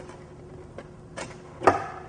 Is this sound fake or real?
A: fake